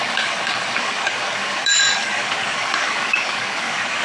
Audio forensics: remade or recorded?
remade